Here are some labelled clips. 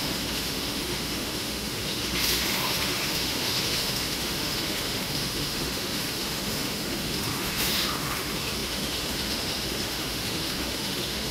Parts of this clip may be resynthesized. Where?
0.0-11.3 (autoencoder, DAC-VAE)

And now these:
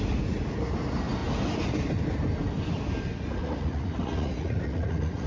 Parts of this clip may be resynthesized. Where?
3.4-5.3 (vocoder, Vocos)